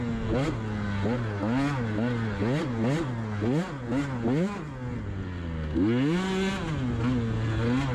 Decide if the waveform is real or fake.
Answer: real